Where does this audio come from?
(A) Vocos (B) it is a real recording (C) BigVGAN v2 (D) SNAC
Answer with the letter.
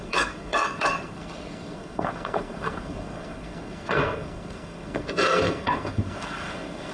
D